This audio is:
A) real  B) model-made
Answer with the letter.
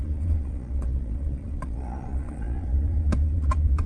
B